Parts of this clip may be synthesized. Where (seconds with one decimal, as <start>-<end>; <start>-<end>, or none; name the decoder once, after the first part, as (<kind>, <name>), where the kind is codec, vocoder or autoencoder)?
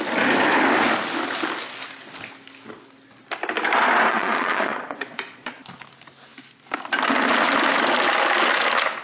4.1-5.6 (vocoder, Vocos)